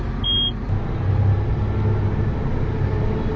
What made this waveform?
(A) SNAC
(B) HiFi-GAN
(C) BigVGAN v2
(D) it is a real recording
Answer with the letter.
D